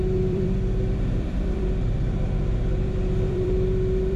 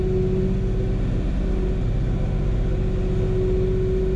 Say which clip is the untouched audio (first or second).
second